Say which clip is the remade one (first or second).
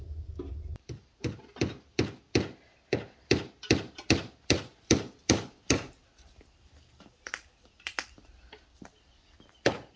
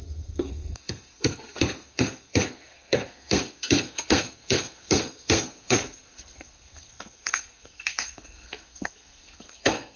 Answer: second